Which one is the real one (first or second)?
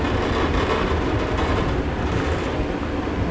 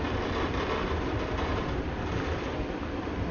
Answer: first